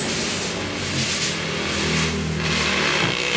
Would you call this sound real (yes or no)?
yes